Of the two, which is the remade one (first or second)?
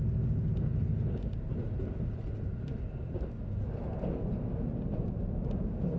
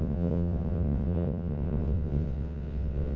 second